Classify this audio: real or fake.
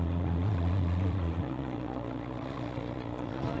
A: fake